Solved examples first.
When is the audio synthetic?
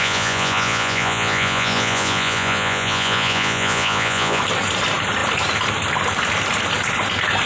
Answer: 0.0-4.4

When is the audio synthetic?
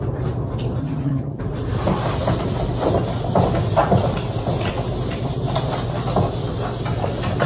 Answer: 0.8-1.4